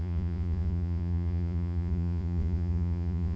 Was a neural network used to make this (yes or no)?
yes